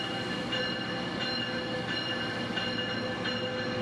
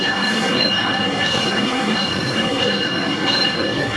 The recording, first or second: first